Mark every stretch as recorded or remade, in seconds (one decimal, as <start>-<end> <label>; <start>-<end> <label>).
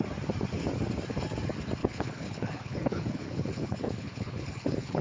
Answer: 0.0-1.8 recorded; 1.8-5.0 remade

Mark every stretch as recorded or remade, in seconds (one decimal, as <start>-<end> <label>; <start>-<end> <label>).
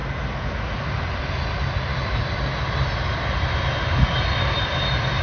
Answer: 0.0-1.9 recorded; 1.9-2.6 remade; 2.6-5.2 recorded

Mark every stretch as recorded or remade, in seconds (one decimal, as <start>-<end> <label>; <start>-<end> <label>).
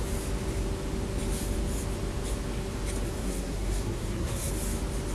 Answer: 0.0-3.2 recorded; 3.2-4.5 remade; 4.5-5.1 recorded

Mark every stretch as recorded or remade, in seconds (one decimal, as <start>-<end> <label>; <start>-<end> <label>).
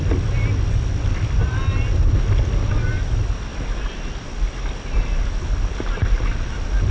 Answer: 0.0-6.9 recorded